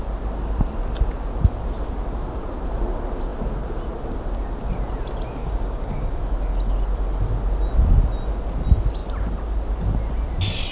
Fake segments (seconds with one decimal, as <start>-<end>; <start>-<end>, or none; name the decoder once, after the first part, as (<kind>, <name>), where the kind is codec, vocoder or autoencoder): 5.4-6.1 (codec, DAC)